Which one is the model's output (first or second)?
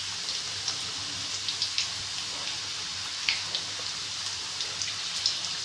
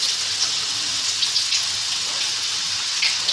second